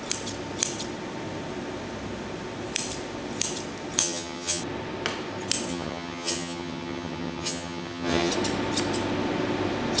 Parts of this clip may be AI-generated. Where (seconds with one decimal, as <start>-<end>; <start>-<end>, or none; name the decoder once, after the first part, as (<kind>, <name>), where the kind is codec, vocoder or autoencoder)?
4.0-4.6 (vocoder, HiFi-GAN); 5.7-8.3